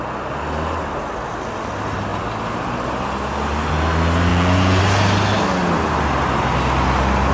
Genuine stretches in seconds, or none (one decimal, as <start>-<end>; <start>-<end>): 0.0-4.3; 4.8-7.3